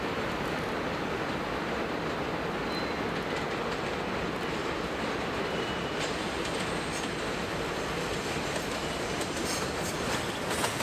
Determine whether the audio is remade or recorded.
recorded